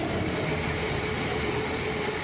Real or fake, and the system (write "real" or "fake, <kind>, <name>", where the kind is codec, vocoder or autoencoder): real